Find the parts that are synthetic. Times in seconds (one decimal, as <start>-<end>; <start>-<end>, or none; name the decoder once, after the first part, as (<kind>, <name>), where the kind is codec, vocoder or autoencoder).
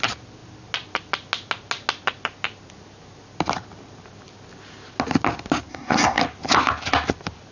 5.7-6.2 (codec, SNAC)